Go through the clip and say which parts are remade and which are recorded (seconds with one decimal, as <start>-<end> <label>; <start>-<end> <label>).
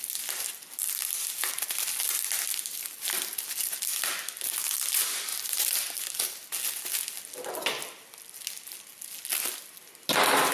0.0-5.3 recorded; 5.3-6.2 remade; 6.2-10.5 recorded